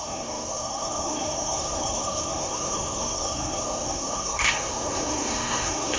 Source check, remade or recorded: remade